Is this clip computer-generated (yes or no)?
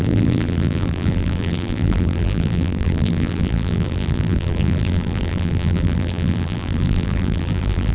yes